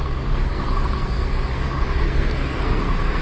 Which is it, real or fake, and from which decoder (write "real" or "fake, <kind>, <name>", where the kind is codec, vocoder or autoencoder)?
fake, codec, SNAC